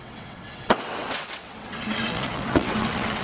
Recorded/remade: remade